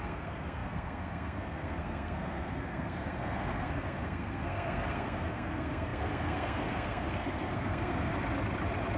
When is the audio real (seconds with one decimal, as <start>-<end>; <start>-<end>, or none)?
8.1-9.0